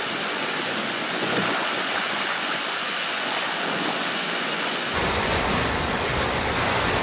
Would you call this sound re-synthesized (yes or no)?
yes